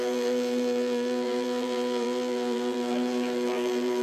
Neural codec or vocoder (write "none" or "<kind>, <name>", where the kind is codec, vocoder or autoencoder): vocoder, BigVGAN v2